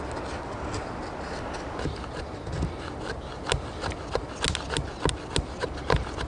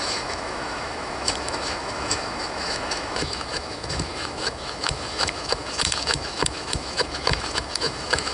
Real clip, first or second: first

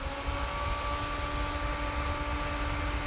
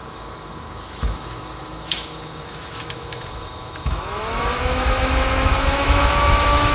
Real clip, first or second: first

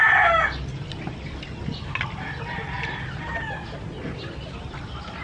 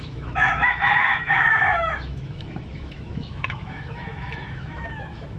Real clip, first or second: first